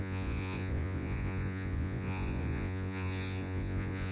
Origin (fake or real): fake